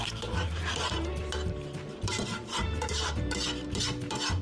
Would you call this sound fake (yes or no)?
yes